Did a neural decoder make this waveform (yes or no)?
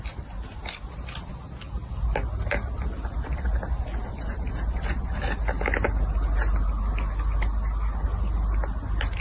no